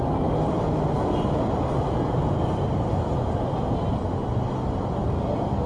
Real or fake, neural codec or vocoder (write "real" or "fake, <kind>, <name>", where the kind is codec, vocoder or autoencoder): real